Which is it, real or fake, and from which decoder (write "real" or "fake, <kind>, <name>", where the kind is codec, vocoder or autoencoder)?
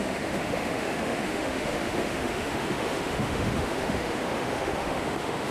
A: fake, autoencoder, DAC-VAE